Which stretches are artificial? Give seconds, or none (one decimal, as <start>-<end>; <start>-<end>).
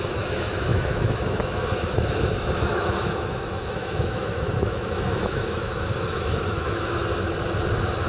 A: 0.0-7.0